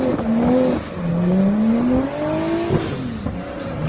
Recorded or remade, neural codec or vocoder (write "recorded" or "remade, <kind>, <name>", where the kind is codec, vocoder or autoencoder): recorded